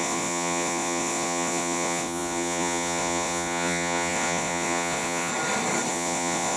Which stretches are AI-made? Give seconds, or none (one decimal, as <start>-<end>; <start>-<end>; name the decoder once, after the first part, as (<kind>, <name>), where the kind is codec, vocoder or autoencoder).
0.0-5.3 (vocoder, Vocos); 5.9-6.6